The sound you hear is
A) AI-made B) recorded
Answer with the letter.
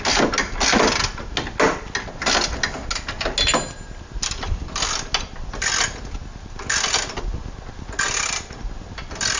B